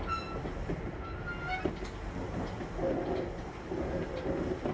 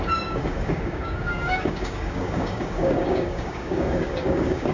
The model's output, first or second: second